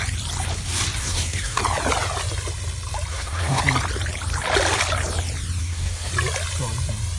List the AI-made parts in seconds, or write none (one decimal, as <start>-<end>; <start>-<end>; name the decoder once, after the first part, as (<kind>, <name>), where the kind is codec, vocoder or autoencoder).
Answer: 1.0-1.6 (codec, SNAC); 3.1-3.6; 5.6-6.1